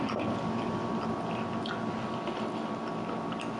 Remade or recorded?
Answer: recorded